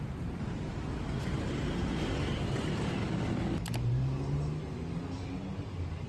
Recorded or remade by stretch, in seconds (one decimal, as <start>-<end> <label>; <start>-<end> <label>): 0.0-6.1 recorded